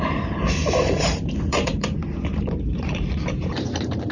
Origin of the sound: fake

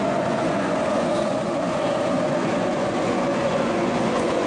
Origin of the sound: fake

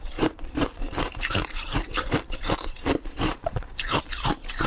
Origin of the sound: fake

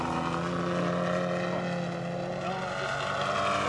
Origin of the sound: real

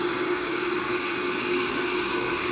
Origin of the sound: fake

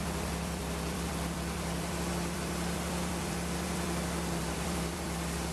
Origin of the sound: fake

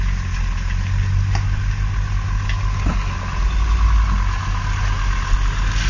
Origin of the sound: real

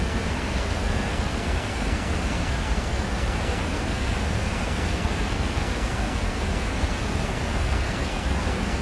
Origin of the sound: fake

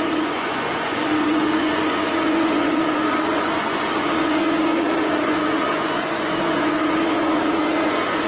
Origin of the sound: fake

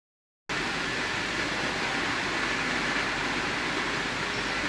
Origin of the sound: real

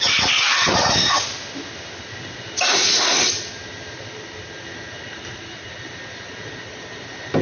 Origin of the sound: real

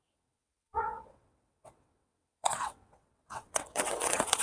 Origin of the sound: fake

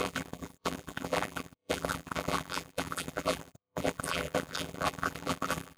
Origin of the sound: fake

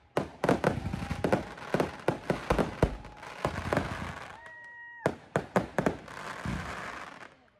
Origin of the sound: real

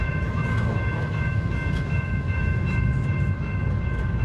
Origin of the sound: fake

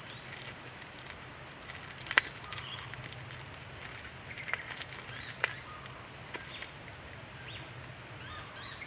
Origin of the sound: real